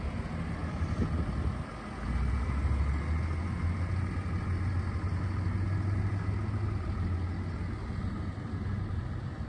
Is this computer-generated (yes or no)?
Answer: no